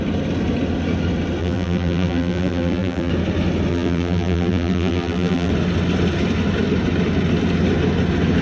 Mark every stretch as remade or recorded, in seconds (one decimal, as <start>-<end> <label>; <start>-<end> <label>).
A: 0.0-1.4 recorded; 1.4-3.1 remade; 3.1-3.7 recorded; 3.7-5.5 remade; 5.5-8.4 recorded